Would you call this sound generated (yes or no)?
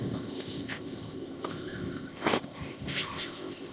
yes